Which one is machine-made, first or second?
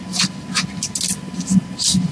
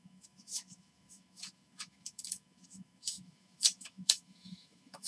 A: second